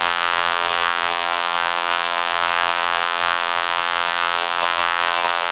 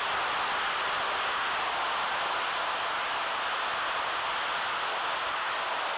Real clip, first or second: second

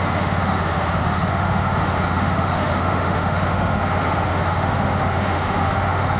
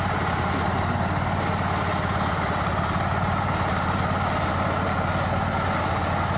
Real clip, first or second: second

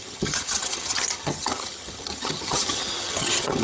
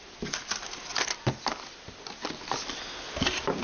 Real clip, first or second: second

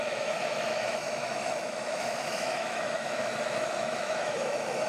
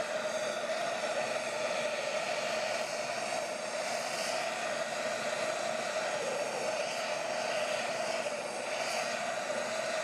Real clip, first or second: second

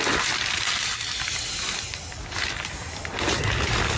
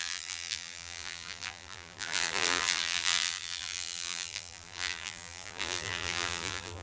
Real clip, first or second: first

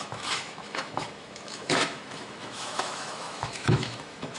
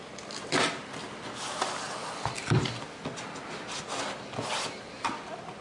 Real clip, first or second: second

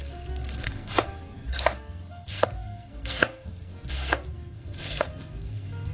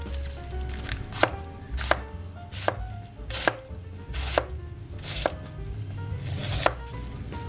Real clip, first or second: second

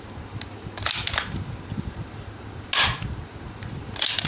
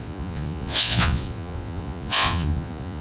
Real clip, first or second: first